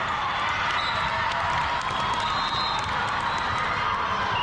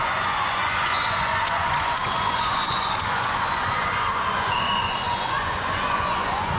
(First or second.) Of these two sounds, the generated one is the second